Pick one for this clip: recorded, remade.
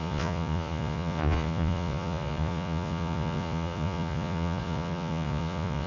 remade